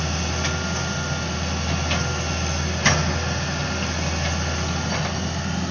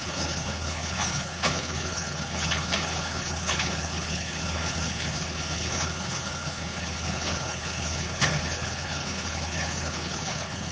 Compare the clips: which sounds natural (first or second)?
first